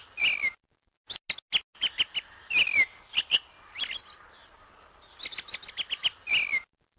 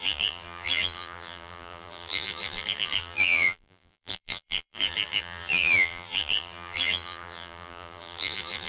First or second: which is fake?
second